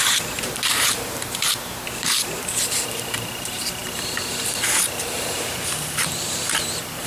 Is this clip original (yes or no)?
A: no